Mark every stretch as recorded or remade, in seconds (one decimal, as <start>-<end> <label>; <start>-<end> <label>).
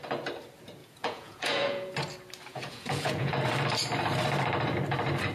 0.0-0.8 recorded; 0.8-1.9 remade; 1.9-2.5 recorded; 2.5-3.4 remade; 3.4-5.3 recorded